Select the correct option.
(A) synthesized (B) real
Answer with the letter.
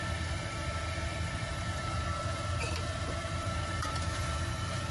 A